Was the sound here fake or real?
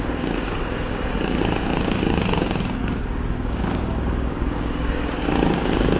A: fake